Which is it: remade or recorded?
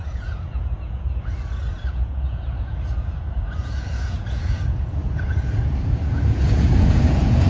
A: remade